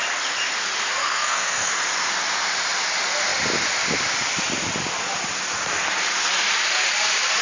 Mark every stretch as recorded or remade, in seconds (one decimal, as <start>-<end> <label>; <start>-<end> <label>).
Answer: 0.0-1.0 recorded; 1.0-1.7 remade; 1.7-7.4 recorded